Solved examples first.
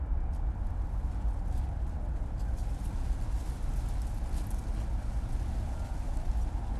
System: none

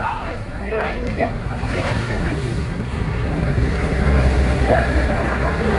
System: codec, SNAC